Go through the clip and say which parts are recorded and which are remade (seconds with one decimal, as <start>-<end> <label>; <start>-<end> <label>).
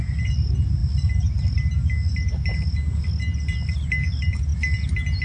0.0-5.2 recorded